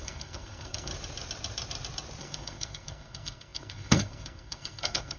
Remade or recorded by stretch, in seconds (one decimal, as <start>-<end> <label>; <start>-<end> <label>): 0.0-0.9 remade; 0.9-2.2 recorded; 2.2-5.2 remade